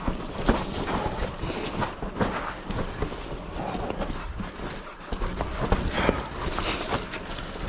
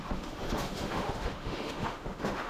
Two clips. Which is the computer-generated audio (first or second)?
second